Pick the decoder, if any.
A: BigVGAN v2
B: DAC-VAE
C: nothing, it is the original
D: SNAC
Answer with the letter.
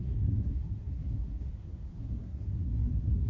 D